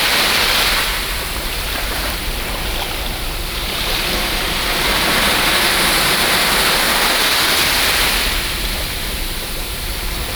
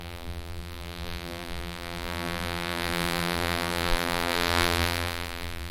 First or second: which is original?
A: first